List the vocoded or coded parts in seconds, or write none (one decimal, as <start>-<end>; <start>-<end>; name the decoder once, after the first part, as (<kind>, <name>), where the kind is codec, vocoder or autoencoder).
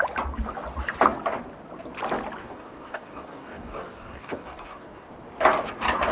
2.4-5.1 (codec, DAC)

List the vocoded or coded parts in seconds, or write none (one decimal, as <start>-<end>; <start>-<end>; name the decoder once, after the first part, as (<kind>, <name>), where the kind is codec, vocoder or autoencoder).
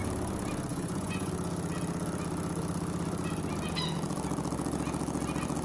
0.7-1.3 (vocoder, Vocos)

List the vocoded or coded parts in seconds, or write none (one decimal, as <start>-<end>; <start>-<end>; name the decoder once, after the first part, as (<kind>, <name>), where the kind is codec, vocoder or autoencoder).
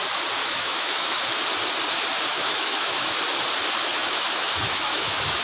0.4-1.2 (autoencoder, DAC-VAE); 2.3-3.2; 3.9-5.4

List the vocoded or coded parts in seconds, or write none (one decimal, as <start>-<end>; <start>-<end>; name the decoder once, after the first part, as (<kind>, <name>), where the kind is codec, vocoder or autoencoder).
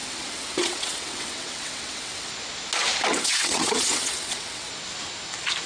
0.0-2.3 (vocoder, WaveNeXt); 3.1-4.7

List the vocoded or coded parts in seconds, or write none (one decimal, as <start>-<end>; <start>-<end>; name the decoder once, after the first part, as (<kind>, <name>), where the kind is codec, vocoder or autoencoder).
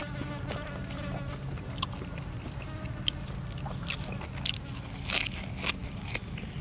none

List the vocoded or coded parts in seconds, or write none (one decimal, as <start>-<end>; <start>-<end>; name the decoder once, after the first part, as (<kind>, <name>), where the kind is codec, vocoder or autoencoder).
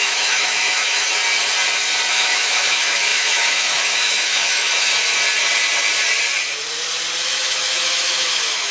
0.0-1.2 (autoencoder, DAC-VAE); 2.1-4.9; 7.2-8.7